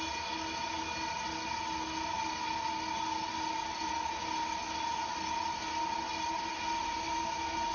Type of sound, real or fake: real